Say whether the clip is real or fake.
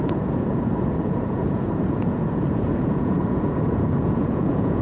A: fake